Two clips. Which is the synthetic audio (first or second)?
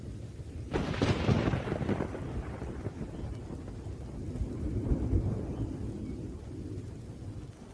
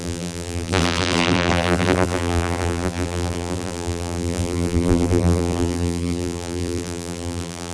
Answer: second